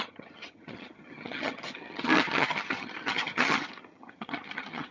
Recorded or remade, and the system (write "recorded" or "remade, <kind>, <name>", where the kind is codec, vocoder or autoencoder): remade, vocoder, HiFi-GAN